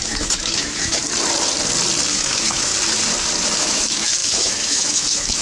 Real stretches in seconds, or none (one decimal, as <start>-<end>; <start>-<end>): 1.0-2.1; 2.7-3.6